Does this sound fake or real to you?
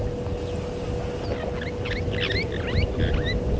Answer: real